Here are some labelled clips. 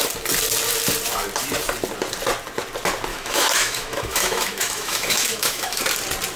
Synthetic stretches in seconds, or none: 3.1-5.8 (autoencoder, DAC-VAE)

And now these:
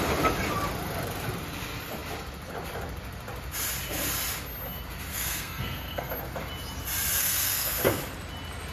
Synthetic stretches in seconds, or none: 5.1-6.1 (codec, SNAC); 7.2-8.0

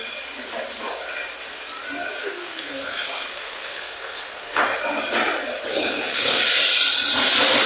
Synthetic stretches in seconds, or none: 2.2-4.6 (codec, SNAC); 5.7-6.4